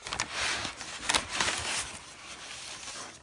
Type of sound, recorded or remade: recorded